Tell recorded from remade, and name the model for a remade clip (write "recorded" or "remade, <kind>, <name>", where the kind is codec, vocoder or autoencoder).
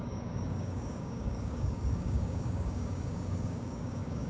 remade, codec, DAC